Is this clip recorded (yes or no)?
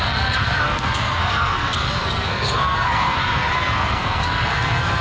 no